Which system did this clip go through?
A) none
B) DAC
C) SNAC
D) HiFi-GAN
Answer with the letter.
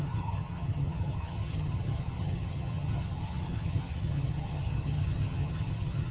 D